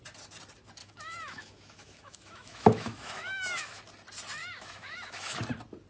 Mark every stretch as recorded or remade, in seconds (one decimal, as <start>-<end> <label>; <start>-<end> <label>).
0.0-0.8 recorded; 0.8-3.8 remade; 3.8-4.4 recorded; 4.4-5.4 remade; 5.4-5.9 recorded